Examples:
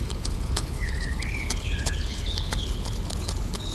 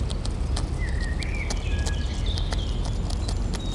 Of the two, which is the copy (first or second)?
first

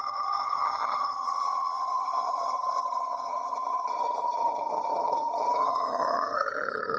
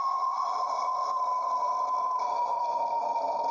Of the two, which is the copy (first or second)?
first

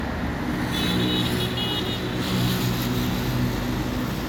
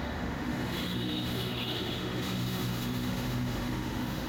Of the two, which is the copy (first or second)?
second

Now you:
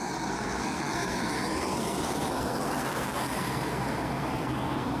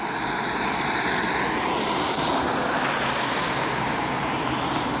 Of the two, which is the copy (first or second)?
first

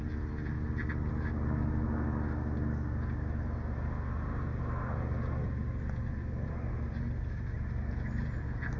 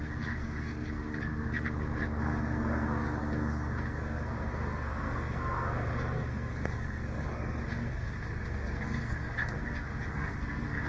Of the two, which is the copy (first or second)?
second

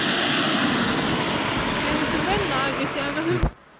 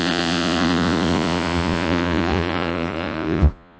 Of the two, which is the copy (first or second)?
second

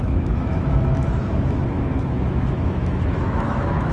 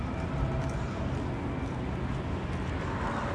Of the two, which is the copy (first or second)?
first